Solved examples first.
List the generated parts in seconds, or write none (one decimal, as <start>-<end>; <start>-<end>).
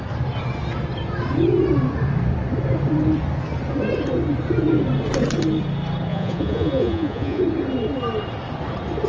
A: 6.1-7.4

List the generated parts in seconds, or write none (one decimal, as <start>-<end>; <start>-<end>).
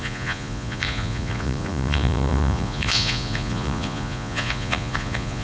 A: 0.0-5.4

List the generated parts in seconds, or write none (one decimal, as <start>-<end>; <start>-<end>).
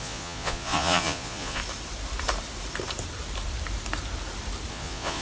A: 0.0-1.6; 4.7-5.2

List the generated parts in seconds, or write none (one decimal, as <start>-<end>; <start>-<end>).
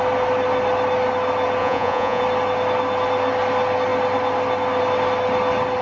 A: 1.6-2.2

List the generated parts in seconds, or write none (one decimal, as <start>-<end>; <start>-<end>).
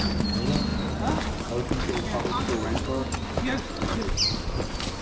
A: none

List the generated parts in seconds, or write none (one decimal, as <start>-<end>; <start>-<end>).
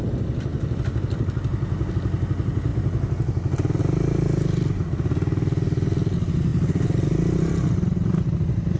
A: none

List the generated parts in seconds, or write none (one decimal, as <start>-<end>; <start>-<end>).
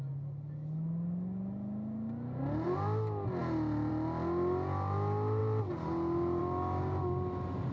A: none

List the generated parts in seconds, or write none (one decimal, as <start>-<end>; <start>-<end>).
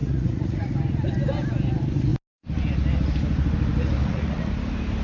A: 0.0-0.7; 4.0-4.5